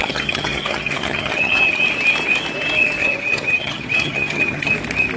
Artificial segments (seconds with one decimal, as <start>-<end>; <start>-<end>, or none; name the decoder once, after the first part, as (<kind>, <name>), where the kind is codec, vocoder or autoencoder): 0.0-1.8 (vocoder, HiFi-GAN); 3.0-4.7